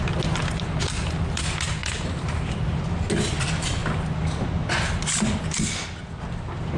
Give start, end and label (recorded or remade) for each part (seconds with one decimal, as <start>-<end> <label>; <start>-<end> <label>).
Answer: 0.0-6.8 recorded